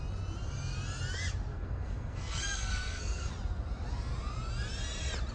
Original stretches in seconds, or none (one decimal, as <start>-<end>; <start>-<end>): 0.0-1.5; 3.3-5.3